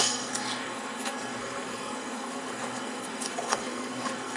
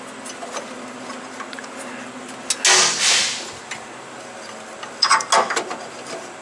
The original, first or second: second